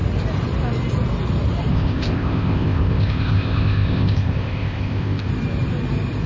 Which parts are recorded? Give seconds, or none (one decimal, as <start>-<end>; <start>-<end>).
0.0-1.7; 5.3-6.3